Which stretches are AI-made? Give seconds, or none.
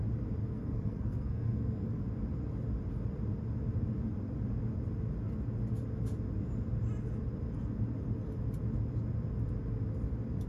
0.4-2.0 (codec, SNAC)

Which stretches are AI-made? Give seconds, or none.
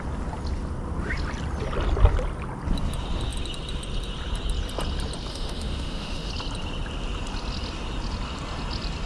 5.3-6.3 (autoencoder, DAC-VAE)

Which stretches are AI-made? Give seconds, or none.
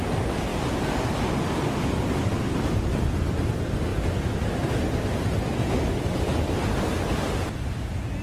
2.3-3.5 (vocoder, BigVGAN v2)